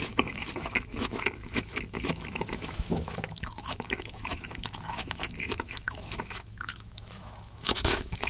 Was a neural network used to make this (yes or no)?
yes